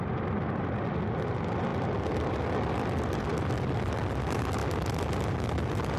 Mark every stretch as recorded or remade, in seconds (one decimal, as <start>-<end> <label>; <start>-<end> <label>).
0.0-1.7 recorded; 1.7-2.3 remade; 2.3-3.3 recorded; 3.3-4.0 remade; 4.0-6.0 recorded